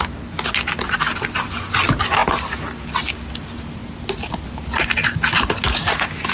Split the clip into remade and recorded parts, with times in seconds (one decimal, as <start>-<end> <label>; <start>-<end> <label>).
0.0-6.3 recorded